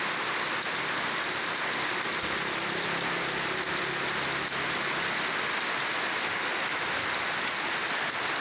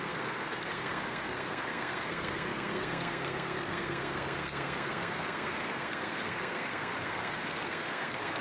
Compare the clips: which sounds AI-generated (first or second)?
second